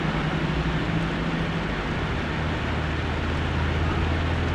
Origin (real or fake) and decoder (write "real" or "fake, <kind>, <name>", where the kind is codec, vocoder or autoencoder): real